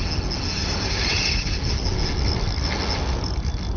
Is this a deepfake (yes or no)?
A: no